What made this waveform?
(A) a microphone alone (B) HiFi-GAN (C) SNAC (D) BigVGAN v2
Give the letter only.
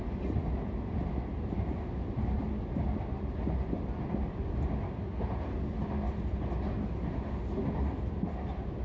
A